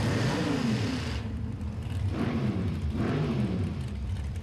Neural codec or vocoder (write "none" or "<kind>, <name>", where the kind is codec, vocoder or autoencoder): none